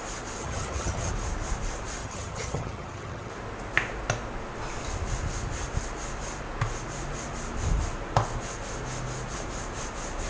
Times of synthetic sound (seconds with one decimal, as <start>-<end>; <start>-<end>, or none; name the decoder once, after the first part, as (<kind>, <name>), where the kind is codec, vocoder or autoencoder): 0.4-1.1 (vocoder, HiFi-GAN); 2.0-3.3